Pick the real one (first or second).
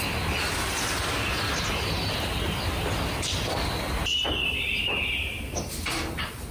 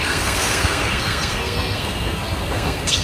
first